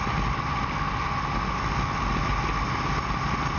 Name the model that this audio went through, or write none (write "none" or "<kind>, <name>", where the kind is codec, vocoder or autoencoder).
none